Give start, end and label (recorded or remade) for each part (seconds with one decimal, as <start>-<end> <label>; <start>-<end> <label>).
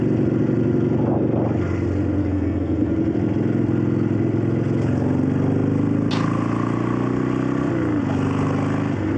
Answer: 0.0-2.2 recorded; 2.2-2.9 remade; 2.9-9.2 recorded